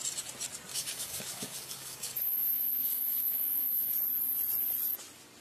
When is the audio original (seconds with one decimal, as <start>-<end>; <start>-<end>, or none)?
0.0-0.7; 3.9-5.4